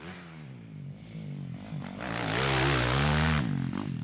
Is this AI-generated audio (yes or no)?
no